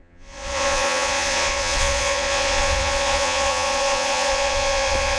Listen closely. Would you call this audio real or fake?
fake